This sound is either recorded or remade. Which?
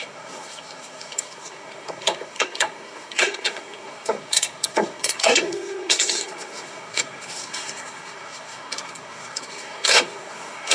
remade